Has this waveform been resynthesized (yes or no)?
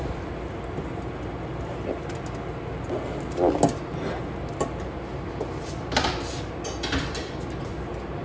no